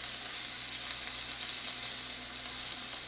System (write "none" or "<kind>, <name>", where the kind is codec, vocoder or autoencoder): none